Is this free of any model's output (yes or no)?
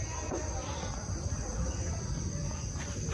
yes